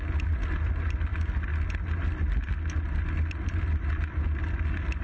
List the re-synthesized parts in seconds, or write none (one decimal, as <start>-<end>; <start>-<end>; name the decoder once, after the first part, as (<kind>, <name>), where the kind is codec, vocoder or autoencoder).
none